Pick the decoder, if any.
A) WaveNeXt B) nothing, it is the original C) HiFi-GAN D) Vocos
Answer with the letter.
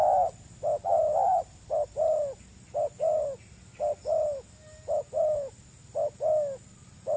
B